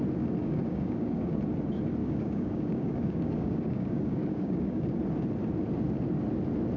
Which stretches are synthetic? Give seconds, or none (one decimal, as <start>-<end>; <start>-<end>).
0.4-1.4; 2.0-5.0